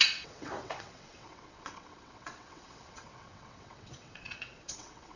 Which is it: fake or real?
fake